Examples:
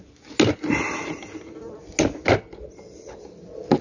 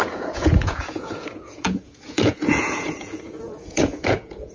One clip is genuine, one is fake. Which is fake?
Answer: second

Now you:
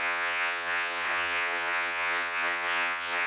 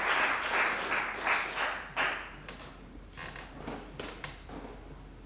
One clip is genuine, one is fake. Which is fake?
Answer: first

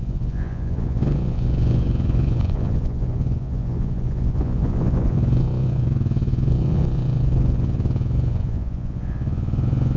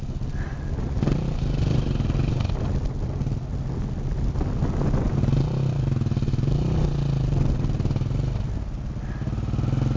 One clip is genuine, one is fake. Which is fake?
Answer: first